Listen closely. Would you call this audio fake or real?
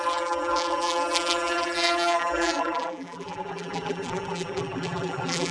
fake